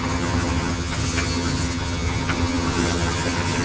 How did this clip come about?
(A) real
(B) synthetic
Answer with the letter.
B